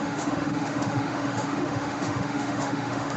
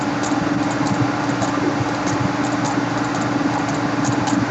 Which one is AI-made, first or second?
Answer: first